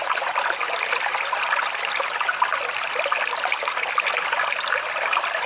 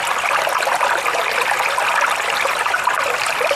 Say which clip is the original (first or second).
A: second